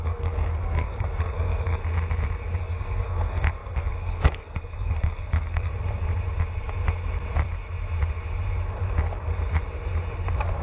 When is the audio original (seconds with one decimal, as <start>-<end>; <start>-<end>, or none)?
1.8-2.6; 5.7-10.6